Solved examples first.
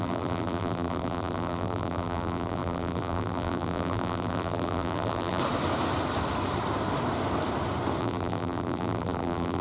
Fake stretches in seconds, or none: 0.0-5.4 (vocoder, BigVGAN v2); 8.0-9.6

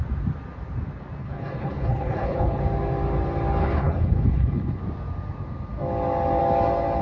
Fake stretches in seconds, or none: 1.2-2.6 (codec, HILCodec); 3.6-4.8

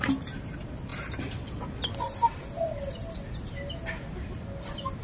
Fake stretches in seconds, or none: none

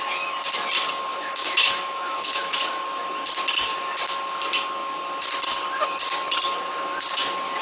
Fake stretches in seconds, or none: 1.1-2.6 (autoencoder, DAC-VAE)

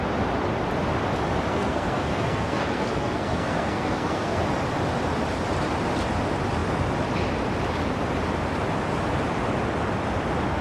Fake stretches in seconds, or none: 1.5-4.4 (codec, SNAC)

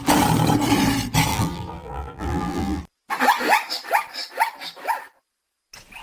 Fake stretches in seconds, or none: 1.3-2.8 (vocoder, BigVGAN v2)

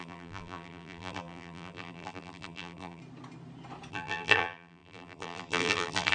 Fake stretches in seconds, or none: 0.0-3.0 (vocoder, BigVGAN v2); 3.9-6.1

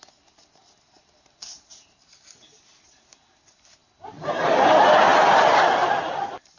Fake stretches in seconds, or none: none